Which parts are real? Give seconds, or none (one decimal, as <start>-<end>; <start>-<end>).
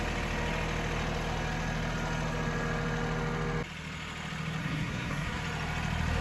0.0-4.6; 5.4-6.2